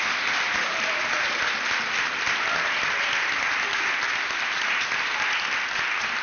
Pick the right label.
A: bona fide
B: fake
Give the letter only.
A